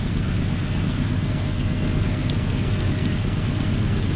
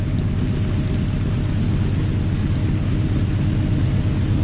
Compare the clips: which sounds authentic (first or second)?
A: second